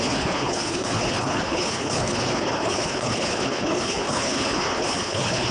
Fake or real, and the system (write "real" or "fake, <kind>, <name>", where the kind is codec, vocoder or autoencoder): fake, codec, HILCodec